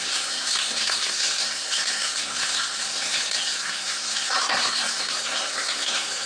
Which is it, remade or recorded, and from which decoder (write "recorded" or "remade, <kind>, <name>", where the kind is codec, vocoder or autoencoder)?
remade, codec, SNAC